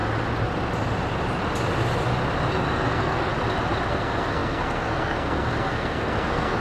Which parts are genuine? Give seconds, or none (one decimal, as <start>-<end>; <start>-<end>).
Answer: 0.0-2.5; 3.3-3.9

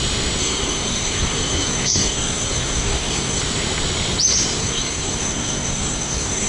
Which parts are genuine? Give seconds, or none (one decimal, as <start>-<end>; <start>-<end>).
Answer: 0.0-0.4; 3.4-4.6

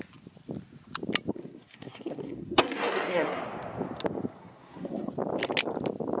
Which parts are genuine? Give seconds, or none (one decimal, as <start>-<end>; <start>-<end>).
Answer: 0.0-1.3; 3.4-4.4; 5.1-6.2

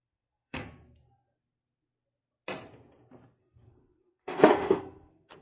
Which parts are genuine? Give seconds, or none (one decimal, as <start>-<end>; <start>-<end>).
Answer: 0.6-3.4

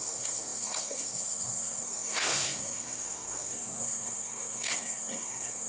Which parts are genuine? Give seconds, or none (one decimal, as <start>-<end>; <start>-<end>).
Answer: none

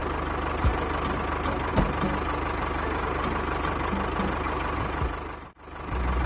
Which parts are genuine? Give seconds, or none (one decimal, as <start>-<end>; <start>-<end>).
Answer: 0.0-6.3